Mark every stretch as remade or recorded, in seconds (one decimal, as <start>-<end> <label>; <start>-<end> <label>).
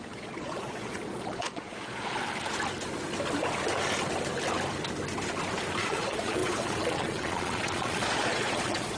0.0-2.2 remade; 2.2-5.8 recorded; 5.8-9.0 remade